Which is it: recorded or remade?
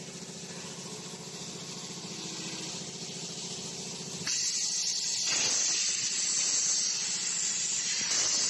recorded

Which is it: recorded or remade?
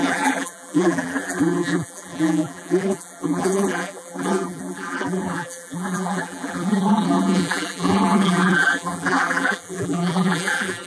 remade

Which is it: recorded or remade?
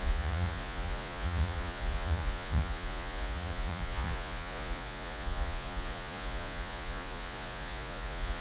remade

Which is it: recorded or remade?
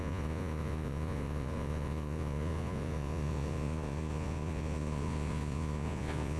remade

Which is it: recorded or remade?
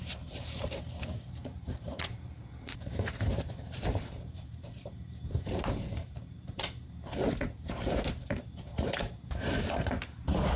remade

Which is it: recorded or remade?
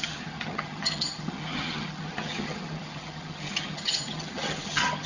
remade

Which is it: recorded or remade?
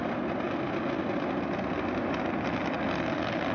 recorded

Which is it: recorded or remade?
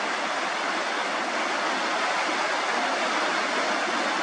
recorded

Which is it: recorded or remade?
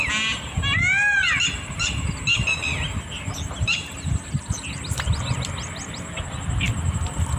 recorded